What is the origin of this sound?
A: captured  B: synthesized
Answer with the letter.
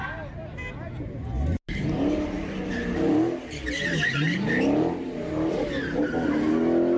A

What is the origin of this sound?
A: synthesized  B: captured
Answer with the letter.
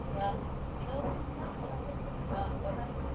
B